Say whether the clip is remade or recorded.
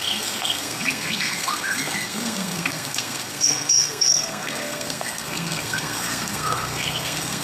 remade